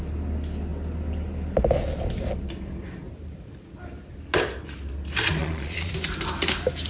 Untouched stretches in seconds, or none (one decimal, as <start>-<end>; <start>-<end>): 0.0-5.4; 5.9-6.9